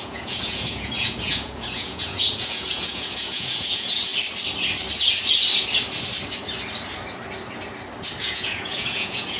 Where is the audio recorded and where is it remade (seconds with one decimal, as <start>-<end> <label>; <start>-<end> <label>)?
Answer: 0.0-4.1 remade; 4.1-8.2 recorded; 8.2-9.4 remade